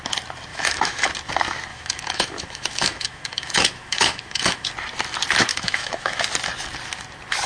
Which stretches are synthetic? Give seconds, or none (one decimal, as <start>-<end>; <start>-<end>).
0.5-1.1; 1.7-4.7; 5.5-6.2